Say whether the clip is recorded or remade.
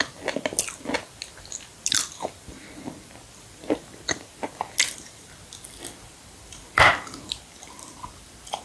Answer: remade